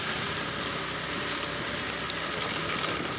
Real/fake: real